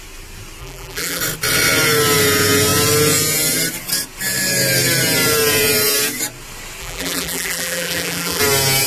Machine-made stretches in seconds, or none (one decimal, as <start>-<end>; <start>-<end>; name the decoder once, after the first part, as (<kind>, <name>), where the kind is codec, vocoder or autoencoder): 0.6-1.2 (vocoder, BigVGAN v2); 6.8-8.4